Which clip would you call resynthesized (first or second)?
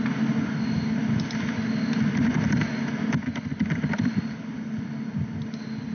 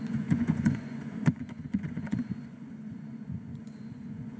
second